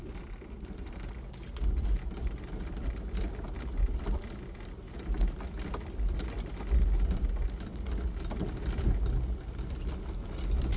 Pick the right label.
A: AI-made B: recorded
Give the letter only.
B